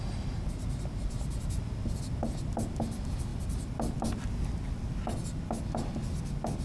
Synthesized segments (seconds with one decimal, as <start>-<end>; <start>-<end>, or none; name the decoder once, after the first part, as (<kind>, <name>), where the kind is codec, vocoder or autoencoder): none